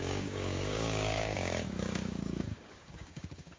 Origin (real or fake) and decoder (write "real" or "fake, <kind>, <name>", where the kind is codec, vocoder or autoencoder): fake, codec, DAC